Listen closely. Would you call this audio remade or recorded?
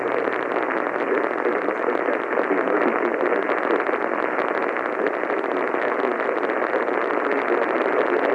recorded